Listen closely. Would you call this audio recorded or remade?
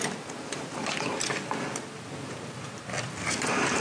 recorded